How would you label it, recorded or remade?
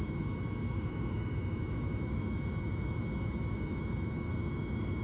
remade